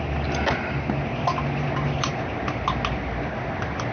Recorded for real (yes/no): yes